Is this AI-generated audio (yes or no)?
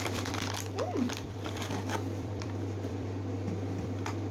yes